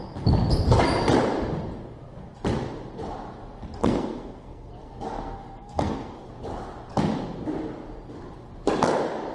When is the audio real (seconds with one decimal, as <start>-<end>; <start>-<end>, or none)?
0.0-3.8; 6.3-9.3